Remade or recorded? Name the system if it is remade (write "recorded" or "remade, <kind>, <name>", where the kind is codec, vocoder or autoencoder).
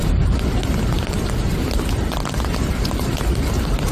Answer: remade, vocoder, BigVGAN v2